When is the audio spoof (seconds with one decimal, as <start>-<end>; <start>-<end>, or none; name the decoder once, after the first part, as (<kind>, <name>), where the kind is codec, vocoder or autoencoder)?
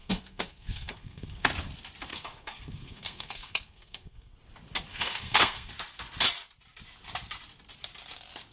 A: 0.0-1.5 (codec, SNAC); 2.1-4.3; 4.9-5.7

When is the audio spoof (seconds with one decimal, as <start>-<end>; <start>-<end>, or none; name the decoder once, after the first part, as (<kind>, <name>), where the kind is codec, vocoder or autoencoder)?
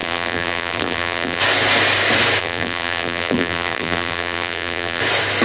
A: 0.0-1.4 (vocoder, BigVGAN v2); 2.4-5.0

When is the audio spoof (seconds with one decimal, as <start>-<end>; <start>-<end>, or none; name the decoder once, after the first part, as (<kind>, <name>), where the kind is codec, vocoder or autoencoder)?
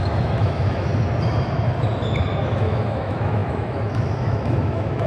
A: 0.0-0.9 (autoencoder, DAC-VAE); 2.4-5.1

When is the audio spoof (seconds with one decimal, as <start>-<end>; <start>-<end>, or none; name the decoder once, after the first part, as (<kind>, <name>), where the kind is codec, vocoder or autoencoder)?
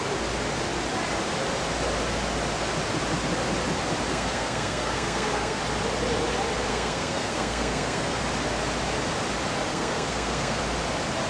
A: 4.1-5.6 (codec, SNAC); 6.7-8.2; 9.7-10.6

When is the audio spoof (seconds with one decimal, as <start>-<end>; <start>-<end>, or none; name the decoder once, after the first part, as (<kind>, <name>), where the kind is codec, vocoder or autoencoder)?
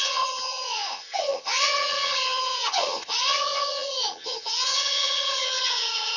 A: 0.0-6.2 (vocoder, HiFi-GAN)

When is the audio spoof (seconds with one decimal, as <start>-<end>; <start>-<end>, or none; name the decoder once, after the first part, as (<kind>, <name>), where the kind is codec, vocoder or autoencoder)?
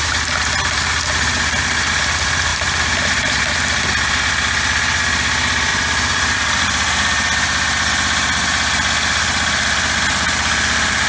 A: 2.5-3.5 (vocoder, BigVGAN v2); 5.7-6.6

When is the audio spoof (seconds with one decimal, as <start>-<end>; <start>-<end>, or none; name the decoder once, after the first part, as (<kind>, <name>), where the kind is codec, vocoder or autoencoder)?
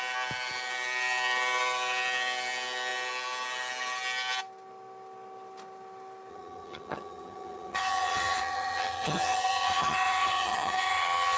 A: 6.3-11.4 (vocoder, HiFi-GAN)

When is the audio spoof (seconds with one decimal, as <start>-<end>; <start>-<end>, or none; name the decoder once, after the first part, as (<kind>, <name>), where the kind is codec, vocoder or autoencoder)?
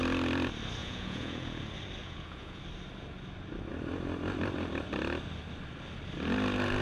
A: 0.8-1.6 (vocoder, Vocos); 2.0-2.6